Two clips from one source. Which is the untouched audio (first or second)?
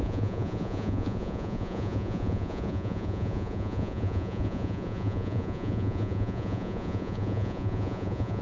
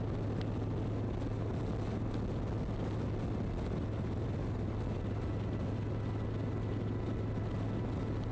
second